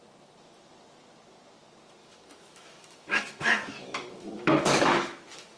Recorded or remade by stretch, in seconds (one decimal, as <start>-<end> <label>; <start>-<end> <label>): 0.0-2.0 recorded; 2.0-5.6 remade